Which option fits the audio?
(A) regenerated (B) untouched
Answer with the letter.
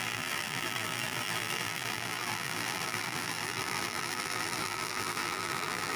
A